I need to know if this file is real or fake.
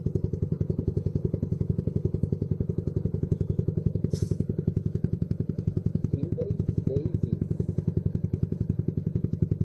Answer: fake